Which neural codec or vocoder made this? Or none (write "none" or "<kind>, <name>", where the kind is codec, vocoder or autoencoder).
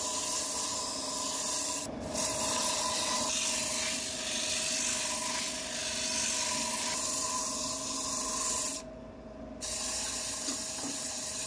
none